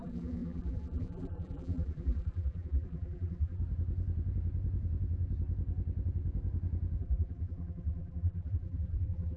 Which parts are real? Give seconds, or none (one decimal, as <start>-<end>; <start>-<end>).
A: 3.6-7.0